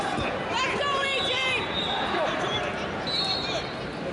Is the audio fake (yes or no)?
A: no